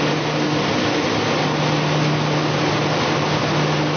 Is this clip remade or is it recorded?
recorded